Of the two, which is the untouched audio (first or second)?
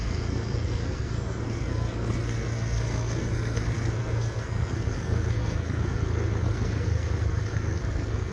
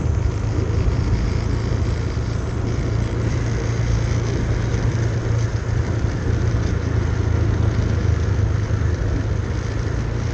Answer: second